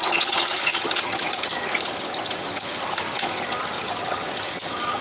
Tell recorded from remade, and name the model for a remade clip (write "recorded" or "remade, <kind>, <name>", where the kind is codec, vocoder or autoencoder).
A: remade, vocoder, HiFi-GAN